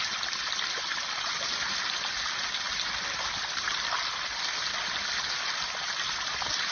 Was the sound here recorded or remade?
recorded